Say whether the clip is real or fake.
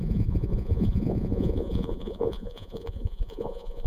fake